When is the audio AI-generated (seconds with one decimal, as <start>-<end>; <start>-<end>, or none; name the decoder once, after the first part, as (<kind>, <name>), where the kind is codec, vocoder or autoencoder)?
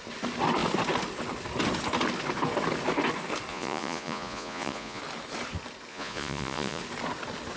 3.5-5.0 (vocoder, Vocos); 5.9-6.8